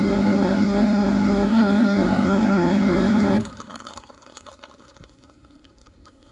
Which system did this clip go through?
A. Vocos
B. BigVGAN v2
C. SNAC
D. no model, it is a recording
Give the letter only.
C